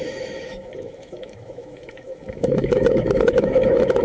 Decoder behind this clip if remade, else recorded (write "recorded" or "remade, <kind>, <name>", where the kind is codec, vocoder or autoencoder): remade, autoencoder, DAC-VAE